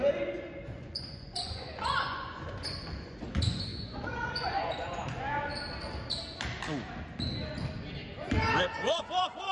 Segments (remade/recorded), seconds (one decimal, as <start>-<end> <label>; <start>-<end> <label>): 0.0-5.5 remade; 5.5-8.6 recorded; 8.6-9.5 remade

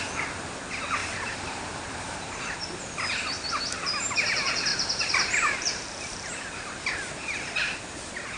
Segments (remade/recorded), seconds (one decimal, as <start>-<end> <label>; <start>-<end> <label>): 0.0-1.0 recorded; 1.0-2.4 remade; 2.4-4.7 recorded; 4.7-6.5 remade; 6.5-8.4 recorded

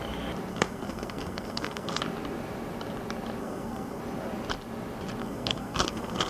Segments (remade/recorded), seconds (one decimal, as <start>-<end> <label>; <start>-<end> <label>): 0.0-0.5 recorded; 0.5-2.0 remade; 2.0-3.4 recorded; 3.4-4.0 remade; 4.0-5.2 recorded; 5.2-6.3 remade